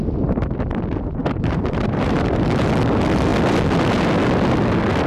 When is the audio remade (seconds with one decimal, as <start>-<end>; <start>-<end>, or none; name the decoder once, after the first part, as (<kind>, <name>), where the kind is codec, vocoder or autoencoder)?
1.2-2.7 (vocoder, BigVGAN v2)